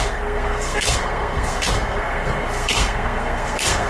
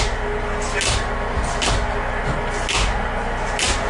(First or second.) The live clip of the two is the second